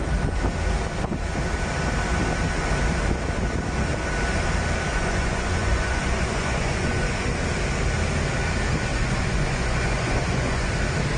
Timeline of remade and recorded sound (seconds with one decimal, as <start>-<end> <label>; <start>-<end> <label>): 0.0-4.9 recorded; 4.9-7.3 remade; 7.3-8.9 recorded; 8.9-10.7 remade; 10.7-11.2 recorded